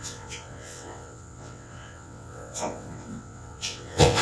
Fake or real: fake